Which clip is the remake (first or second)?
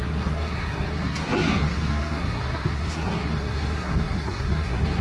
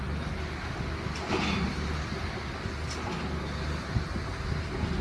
first